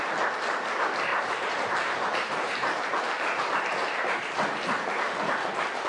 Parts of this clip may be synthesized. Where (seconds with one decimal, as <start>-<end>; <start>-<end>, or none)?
1.1-3.6

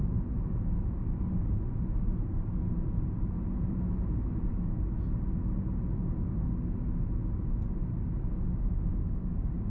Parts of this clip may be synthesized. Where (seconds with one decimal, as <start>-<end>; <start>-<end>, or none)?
0.0-4.5; 7.9-9.7

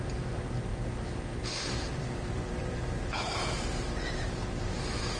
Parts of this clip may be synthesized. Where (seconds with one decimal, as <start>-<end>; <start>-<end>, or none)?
0.0-5.2

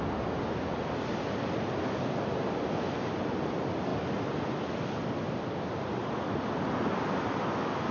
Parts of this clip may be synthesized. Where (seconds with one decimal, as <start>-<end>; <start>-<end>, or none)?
none

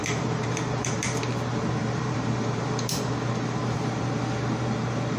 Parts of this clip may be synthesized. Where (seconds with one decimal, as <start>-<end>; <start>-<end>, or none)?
0.0-1.2; 1.8-4.0

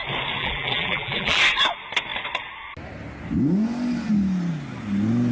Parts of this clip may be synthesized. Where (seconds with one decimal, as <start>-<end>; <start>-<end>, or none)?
0.4-1.4